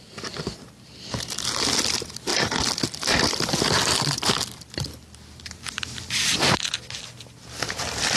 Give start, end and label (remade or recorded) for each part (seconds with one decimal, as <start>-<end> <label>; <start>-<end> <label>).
0.0-8.2 recorded